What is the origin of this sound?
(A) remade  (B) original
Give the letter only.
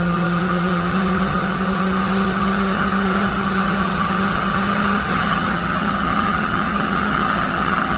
A